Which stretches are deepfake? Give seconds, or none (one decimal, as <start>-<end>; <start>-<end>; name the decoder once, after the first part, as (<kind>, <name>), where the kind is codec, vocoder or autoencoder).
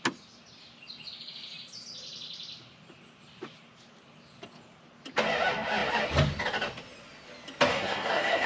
7.7-8.5 (codec, SNAC)